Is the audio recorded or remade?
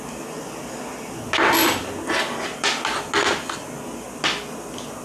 recorded